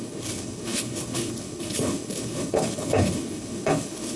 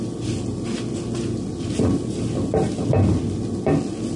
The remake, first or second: first